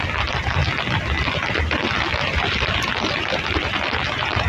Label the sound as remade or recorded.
remade